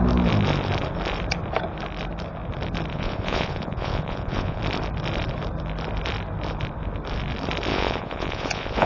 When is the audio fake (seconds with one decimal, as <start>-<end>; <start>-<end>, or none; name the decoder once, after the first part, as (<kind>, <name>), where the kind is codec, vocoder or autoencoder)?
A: 2.9-4.6 (vocoder, Vocos); 7.7-8.9